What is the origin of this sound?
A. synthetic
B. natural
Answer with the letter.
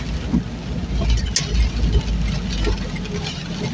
B